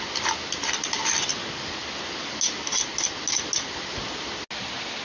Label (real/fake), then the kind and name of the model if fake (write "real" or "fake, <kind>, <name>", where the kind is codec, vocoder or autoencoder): real